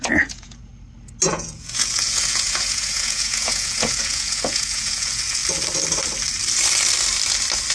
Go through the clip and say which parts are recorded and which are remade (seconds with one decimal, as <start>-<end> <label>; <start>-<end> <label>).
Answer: 0.0-0.7 remade; 0.7-1.3 recorded; 1.3-5.4 remade; 5.4-7.7 recorded